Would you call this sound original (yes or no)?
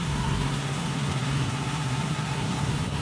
no